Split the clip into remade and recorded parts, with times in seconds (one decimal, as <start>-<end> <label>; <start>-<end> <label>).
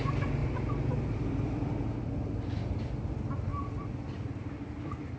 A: 0.0-0.4 recorded; 0.4-2.7 remade; 2.7-3.5 recorded; 3.5-5.2 remade